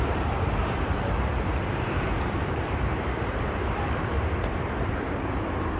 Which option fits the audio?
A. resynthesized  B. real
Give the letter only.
A